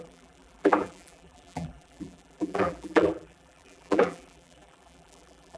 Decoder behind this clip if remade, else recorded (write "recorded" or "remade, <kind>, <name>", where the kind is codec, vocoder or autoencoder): remade, vocoder, BigVGAN v2